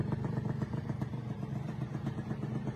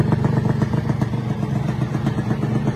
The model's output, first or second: first